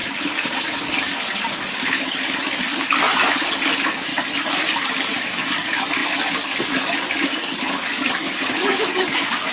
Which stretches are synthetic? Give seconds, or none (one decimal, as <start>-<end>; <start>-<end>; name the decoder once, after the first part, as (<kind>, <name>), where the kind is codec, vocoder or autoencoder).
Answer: 0.0-4.1 (codec, DAC); 4.8-9.5